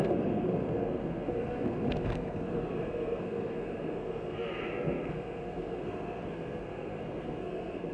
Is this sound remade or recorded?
remade